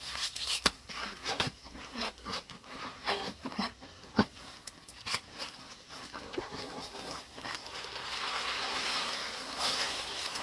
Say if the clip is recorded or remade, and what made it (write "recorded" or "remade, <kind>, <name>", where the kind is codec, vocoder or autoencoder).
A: remade, codec, SNAC